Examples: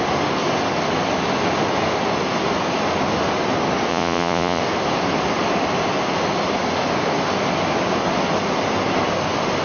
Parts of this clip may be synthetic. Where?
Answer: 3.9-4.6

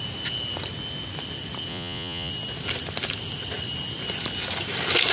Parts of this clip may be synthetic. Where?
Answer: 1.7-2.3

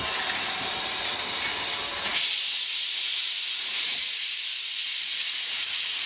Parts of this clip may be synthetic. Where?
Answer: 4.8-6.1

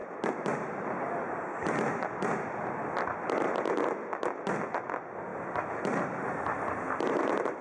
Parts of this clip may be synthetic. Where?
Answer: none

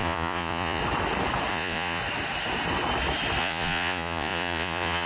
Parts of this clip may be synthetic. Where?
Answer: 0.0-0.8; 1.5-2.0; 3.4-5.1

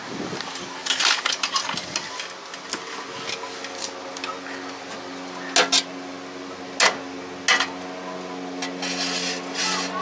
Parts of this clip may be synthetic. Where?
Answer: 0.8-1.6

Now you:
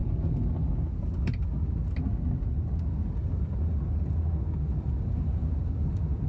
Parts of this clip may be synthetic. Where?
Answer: 0.0-0.7

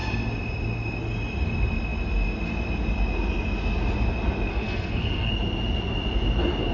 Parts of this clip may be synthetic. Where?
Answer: 4.5-5.3